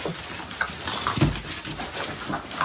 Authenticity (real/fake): real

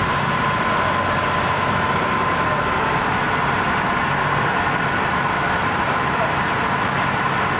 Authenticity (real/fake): real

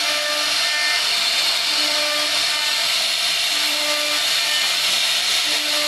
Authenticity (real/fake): real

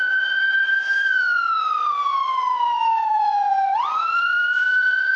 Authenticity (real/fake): fake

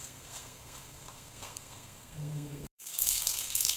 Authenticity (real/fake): fake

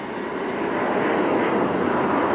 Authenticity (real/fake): real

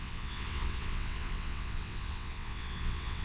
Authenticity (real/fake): fake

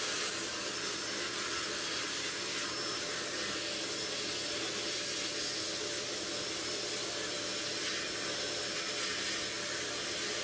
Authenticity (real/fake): real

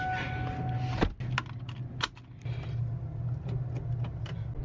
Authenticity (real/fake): real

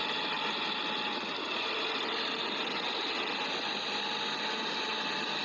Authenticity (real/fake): real